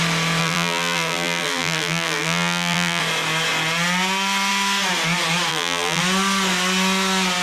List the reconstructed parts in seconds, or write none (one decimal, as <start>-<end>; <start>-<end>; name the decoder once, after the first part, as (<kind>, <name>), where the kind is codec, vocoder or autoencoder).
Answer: 0.4-3.0 (vocoder, BigVGAN v2); 5.5-6.0